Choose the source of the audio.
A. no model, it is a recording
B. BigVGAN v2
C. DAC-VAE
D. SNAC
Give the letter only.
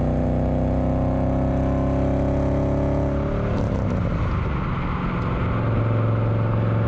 A